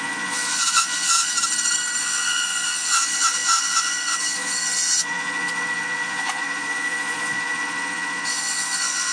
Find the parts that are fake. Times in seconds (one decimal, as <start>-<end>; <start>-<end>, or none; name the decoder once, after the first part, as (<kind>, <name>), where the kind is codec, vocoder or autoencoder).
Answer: 0.0-1.3 (vocoder, Vocos); 2.0-9.1